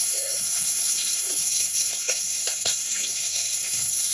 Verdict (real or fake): fake